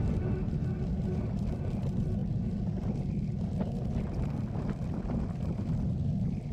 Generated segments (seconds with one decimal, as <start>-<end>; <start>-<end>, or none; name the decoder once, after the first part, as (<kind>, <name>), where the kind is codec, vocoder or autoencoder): none